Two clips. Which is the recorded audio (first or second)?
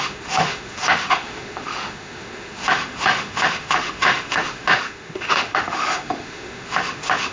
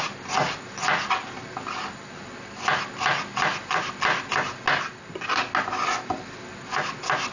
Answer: second